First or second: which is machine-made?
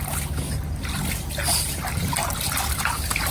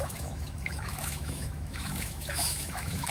second